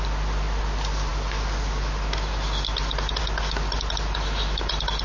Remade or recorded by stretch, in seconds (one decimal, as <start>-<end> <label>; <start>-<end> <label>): 0.0-5.0 recorded